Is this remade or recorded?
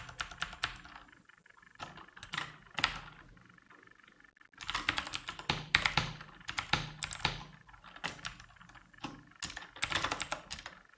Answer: recorded